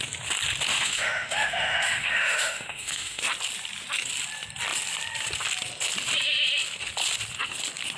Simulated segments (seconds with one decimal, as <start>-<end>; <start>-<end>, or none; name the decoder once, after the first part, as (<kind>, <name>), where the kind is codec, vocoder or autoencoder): 0.7-3.2 (autoencoder, DAC-VAE)